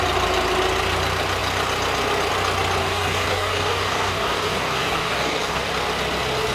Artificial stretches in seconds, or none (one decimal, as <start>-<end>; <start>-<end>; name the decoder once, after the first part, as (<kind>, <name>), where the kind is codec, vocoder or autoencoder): 2.8-5.7 (codec, DAC)